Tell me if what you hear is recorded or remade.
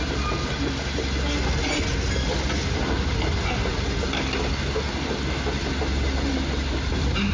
recorded